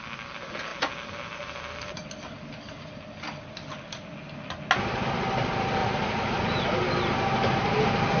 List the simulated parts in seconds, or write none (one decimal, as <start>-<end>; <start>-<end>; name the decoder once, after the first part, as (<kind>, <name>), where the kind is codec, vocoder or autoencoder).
5.8-6.4 (vocoder, Vocos)